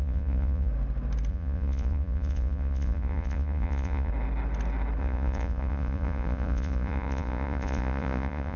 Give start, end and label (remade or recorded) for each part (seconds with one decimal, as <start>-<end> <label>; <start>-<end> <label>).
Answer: 0.0-0.7 remade; 0.7-1.3 recorded; 1.3-4.1 remade; 4.1-5.0 recorded; 5.0-8.6 remade